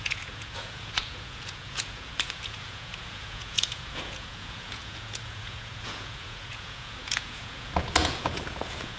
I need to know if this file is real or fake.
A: fake